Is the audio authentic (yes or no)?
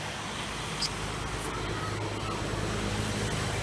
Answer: yes